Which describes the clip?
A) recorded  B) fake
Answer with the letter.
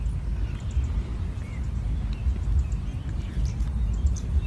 A